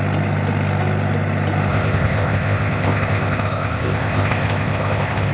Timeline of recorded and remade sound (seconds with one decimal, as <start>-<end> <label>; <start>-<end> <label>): 0.0-1.7 recorded; 1.7-5.3 remade